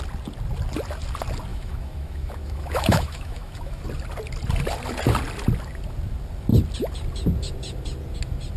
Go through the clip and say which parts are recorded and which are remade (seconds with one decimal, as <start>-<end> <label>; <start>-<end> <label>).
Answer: 0.0-1.5 recorded; 1.5-3.8 remade; 3.8-8.6 recorded